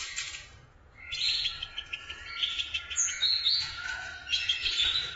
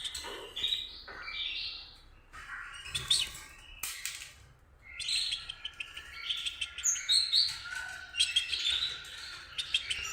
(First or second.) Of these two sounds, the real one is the second